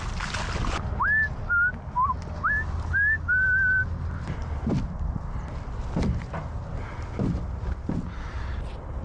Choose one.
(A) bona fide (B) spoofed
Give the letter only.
A